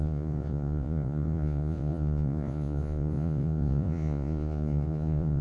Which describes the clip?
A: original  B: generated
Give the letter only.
B